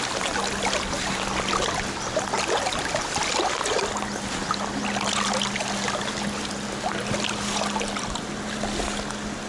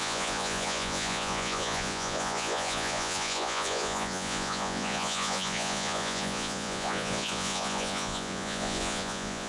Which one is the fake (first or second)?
second